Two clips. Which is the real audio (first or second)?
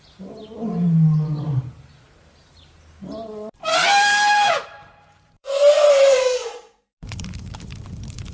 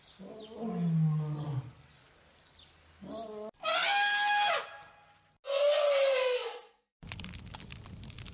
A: second